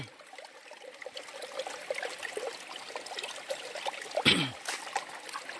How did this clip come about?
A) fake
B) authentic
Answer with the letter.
B